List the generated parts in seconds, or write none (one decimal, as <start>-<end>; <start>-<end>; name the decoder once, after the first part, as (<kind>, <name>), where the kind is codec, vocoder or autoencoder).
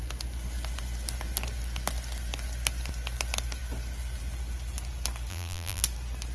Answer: 5.3-5.8 (vocoder, BigVGAN v2)